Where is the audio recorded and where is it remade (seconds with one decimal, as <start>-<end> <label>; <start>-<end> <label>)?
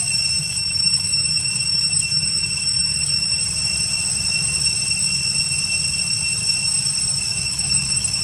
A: 0.0-0.4 recorded; 0.4-3.4 remade; 3.4-7.3 recorded; 7.3-8.2 remade